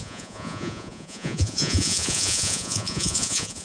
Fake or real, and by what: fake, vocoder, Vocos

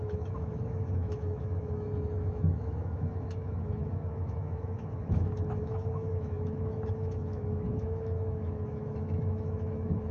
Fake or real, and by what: fake, autoencoder, DAC-VAE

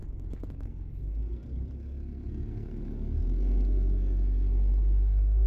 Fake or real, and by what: fake, codec, SNAC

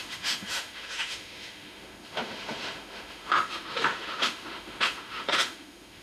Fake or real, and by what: fake, autoencoder, DAC-VAE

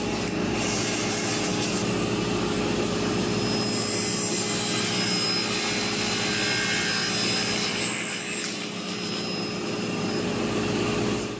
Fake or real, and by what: real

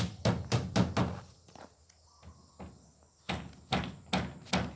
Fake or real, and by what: real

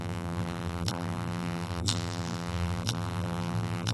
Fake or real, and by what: fake, vocoder, BigVGAN v2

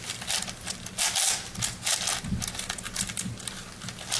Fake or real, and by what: real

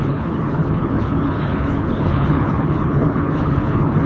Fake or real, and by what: fake, codec, HILCodec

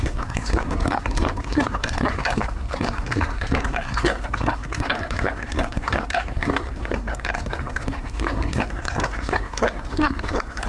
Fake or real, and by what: fake, codec, SNAC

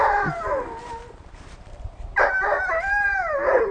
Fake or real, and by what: fake, vocoder, BigVGAN v2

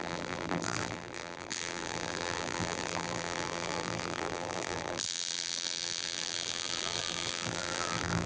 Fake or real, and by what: fake, vocoder, BigVGAN v2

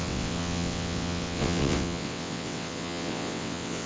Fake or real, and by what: fake, vocoder, WaveNeXt